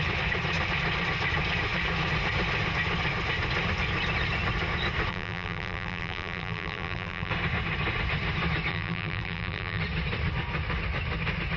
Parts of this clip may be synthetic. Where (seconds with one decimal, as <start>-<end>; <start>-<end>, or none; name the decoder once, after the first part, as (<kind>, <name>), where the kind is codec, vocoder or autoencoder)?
5.1-7.3 (vocoder, BigVGAN v2); 8.7-9.8